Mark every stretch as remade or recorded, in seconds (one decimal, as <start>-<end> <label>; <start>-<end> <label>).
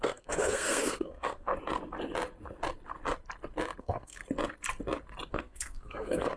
0.0-1.5 remade; 1.5-3.8 recorded; 3.8-4.2 remade; 4.2-5.3 recorded; 5.3-6.4 remade